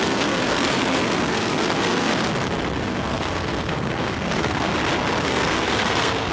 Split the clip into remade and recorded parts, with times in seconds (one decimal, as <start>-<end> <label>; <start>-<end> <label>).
0.0-2.1 remade; 2.1-2.8 recorded; 2.8-4.7 remade; 4.7-5.2 recorded; 5.2-6.3 remade